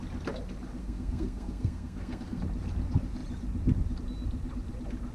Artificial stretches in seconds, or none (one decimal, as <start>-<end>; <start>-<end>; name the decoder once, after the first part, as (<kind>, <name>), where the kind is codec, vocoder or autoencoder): 0.8-2.4 (codec, SNAC)